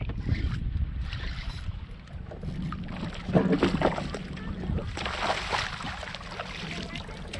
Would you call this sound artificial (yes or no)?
no